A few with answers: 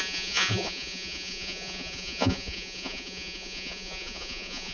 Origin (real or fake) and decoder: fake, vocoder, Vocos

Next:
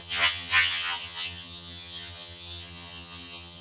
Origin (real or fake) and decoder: fake, vocoder, HiFi-GAN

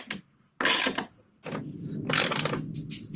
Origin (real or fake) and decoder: real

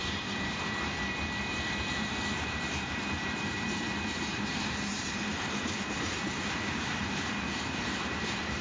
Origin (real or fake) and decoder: fake, vocoder, BigVGAN v2